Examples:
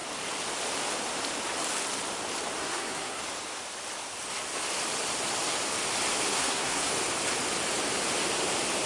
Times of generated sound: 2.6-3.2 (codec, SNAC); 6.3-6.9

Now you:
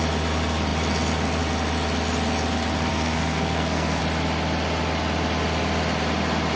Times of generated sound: 2.9-4.0 (codec, SNAC)

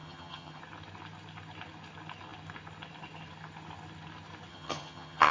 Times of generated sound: 0.0-0.6 (vocoder, HiFi-GAN); 4.5-5.3

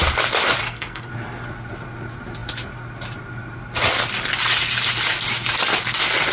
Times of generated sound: 0.6-1.1 (codec, SNAC)